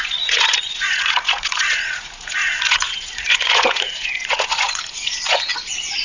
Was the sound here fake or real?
fake